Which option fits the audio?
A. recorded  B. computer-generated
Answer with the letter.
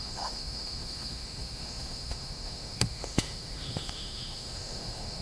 B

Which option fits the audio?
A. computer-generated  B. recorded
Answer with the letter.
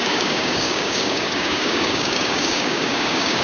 A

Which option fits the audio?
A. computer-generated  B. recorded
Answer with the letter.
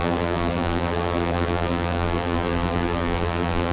A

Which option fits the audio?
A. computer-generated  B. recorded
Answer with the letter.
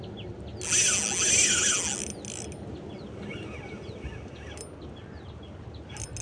B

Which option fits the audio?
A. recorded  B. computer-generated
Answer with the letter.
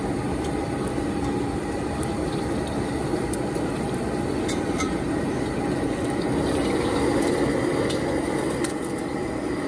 A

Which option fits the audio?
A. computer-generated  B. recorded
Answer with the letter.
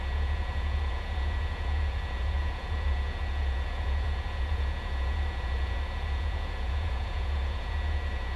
A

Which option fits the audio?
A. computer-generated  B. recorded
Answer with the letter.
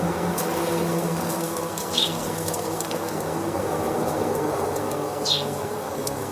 A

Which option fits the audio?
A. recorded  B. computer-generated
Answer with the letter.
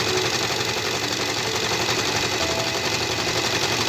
A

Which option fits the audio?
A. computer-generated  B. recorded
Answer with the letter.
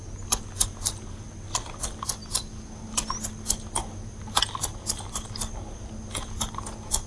B